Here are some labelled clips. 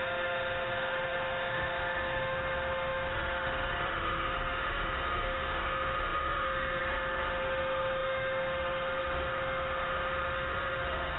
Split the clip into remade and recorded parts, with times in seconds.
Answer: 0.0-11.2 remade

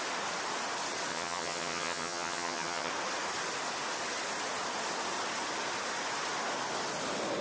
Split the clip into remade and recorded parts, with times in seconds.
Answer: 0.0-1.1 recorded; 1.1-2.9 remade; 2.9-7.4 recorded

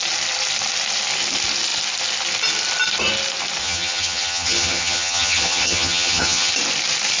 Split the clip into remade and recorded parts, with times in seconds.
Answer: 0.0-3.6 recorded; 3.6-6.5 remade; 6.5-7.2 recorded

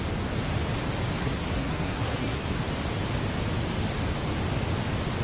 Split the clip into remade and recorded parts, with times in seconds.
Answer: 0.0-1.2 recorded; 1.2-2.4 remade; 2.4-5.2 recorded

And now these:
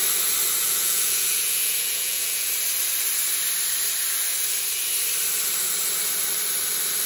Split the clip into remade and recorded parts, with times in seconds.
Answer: 0.0-0.6 recorded; 0.6-2.5 remade; 2.5-7.1 recorded